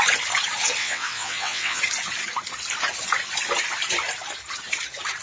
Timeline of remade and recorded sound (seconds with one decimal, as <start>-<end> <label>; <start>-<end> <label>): 0.0-0.8 recorded; 0.8-1.8 remade; 1.8-5.2 recorded